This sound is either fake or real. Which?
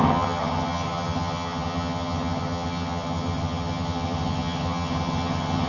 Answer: fake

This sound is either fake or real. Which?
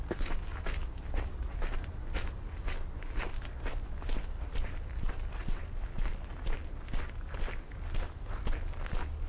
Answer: real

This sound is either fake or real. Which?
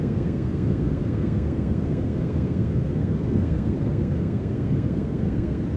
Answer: fake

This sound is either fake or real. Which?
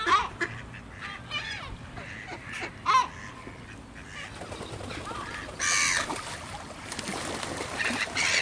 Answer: real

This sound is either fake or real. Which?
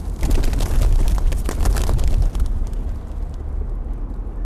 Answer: real